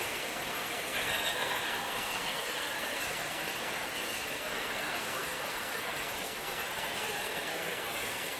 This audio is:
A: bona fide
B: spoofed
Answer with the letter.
B